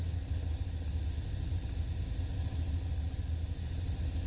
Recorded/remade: recorded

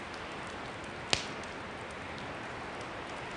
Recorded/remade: recorded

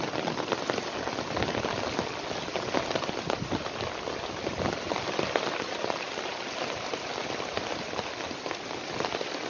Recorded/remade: recorded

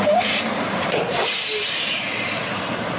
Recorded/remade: remade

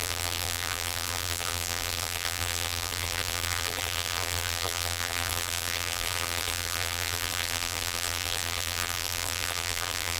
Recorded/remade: remade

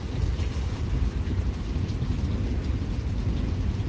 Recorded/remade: recorded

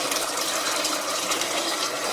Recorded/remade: remade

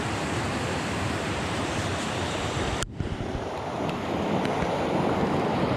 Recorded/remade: remade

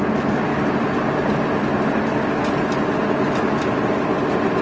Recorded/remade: recorded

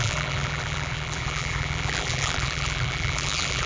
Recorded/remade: remade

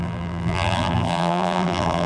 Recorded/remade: remade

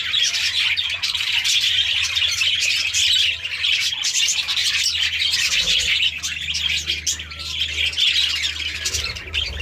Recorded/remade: recorded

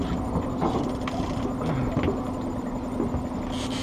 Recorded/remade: recorded